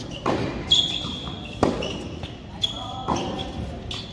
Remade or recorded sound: recorded